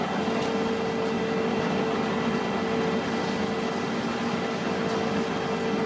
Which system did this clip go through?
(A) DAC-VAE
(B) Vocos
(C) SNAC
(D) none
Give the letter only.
D